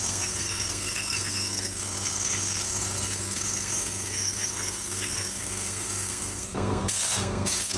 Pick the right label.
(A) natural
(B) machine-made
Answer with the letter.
B